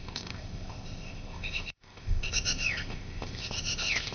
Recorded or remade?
remade